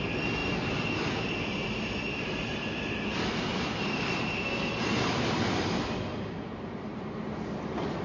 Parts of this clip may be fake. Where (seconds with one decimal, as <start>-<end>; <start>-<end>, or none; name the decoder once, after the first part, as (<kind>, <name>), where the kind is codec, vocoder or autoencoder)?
2.1-5.4 (vocoder, BigVGAN v2); 6.1-7.0